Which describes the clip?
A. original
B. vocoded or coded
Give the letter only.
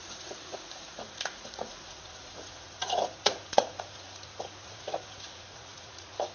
B